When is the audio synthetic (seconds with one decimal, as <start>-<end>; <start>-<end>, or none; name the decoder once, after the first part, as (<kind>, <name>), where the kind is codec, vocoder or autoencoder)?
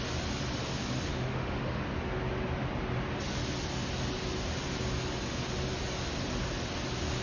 1.1-1.8 (autoencoder, DAC-VAE)